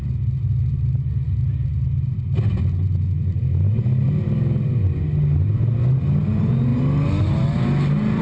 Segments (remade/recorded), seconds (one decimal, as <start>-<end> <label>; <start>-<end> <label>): 0.0-8.2 recorded